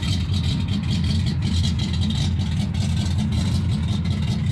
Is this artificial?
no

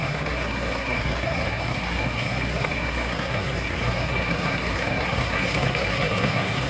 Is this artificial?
yes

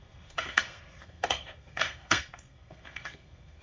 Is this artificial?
yes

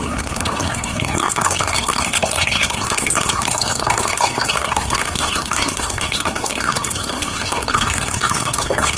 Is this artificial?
yes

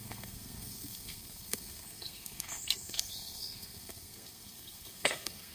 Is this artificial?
yes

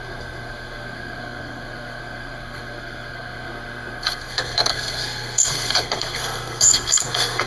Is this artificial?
yes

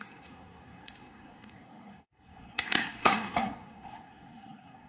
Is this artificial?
yes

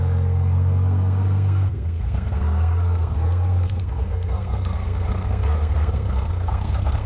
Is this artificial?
yes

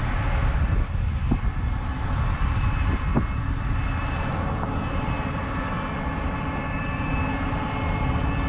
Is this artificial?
no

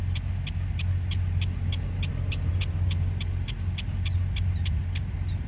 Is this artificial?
no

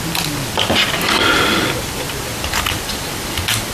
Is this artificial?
no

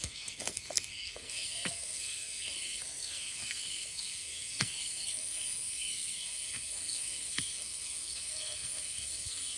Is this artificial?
yes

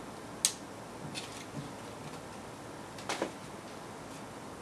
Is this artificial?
no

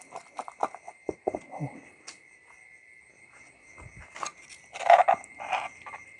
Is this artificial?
no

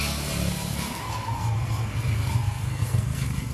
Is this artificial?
yes